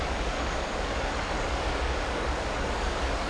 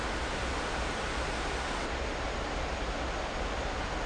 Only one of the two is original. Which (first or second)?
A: second